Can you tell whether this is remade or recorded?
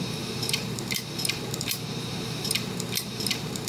remade